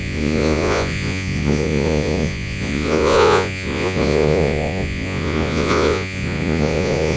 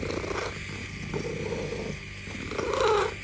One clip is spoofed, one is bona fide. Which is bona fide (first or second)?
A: second